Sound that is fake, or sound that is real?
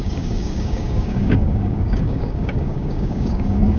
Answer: fake